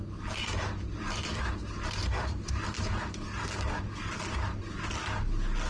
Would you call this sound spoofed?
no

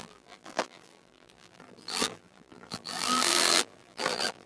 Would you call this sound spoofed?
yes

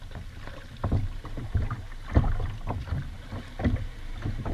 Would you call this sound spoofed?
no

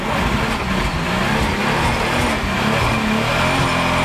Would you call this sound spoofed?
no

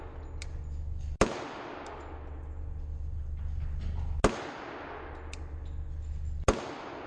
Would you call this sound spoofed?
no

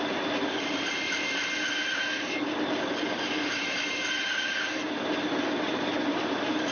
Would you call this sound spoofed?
yes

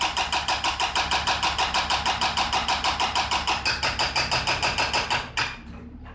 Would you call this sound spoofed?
no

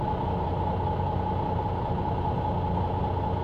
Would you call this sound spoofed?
no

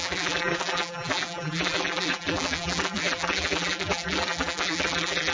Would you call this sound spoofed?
yes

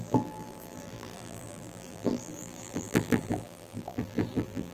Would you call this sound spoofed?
yes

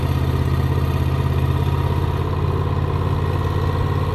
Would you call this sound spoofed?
no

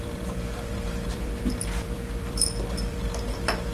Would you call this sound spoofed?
yes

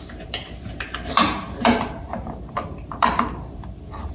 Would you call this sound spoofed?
yes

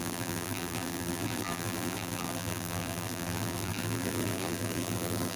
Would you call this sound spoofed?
yes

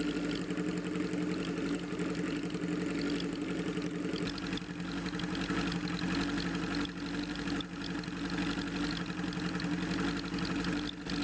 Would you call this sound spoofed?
no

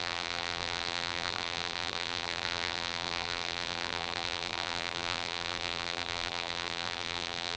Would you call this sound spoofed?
yes